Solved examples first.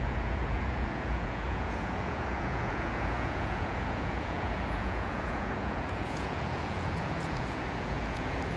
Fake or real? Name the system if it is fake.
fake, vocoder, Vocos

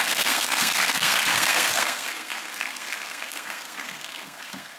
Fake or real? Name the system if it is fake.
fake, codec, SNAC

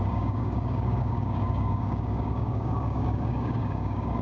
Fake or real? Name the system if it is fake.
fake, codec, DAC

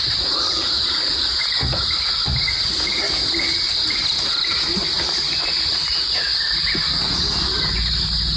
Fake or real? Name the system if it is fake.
real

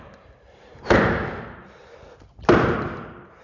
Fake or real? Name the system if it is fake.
real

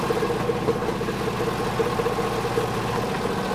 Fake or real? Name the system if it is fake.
real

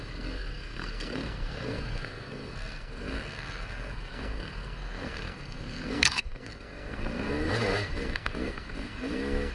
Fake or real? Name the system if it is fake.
fake, codec, SNAC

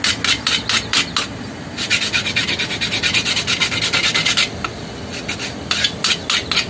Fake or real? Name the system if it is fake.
real